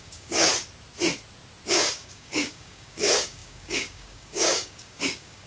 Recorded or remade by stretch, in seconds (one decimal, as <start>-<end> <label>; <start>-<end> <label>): 0.0-0.5 remade; 0.5-1.7 recorded; 1.7-5.5 remade